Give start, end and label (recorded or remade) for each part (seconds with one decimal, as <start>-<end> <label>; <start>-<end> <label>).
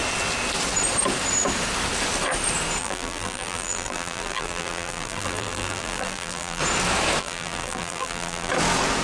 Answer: 0.0-2.8 recorded; 2.8-6.6 remade; 6.6-7.2 recorded; 7.2-8.5 remade; 8.5-9.0 recorded